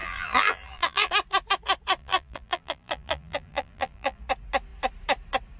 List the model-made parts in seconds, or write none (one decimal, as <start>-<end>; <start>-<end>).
0.0-1.1; 2.0-4.2